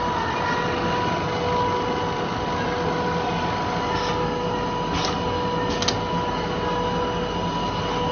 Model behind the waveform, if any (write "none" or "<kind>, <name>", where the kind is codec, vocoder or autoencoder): none